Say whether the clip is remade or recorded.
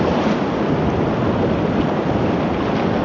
recorded